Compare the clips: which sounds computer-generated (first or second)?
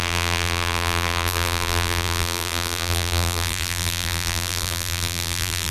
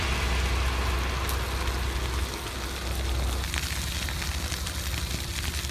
first